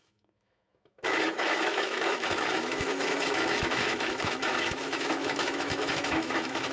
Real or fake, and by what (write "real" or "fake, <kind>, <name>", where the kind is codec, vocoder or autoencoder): fake, autoencoder, DAC-VAE